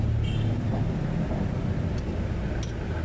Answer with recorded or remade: recorded